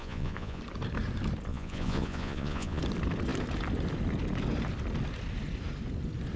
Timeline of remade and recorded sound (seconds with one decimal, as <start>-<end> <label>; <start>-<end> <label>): 0.0-0.6 remade; 0.6-1.5 recorded; 1.5-2.8 remade; 2.8-6.4 recorded